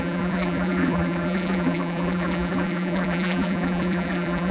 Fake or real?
fake